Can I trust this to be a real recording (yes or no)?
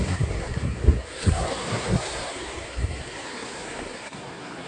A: no